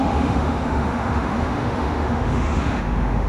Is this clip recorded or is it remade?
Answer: remade